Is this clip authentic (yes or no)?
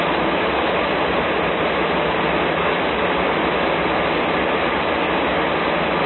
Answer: yes